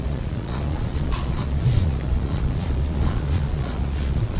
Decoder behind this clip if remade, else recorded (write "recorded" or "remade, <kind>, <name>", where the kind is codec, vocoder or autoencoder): remade, vocoder, Vocos